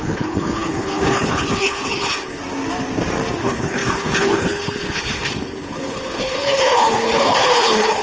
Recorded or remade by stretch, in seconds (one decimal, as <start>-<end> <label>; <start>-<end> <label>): 0.0-2.4 remade; 2.4-3.4 recorded; 3.4-8.0 remade